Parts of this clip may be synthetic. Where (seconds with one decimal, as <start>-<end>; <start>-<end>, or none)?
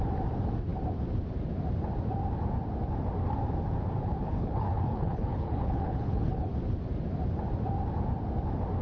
4.2-6.5